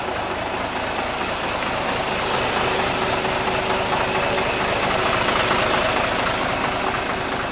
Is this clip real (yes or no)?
yes